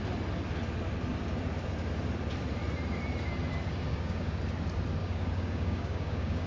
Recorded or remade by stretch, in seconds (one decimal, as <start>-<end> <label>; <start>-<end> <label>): 0.0-3.9 recorded; 3.9-4.4 remade; 4.4-5.0 recorded; 5.0-6.5 remade